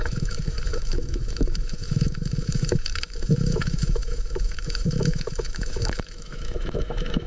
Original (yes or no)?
no